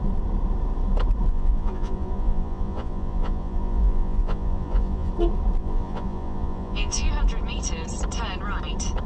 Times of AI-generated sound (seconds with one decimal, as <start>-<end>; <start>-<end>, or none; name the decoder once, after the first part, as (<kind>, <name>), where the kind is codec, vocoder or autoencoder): 1.3-5.1 (vocoder, Vocos); 5.6-7.1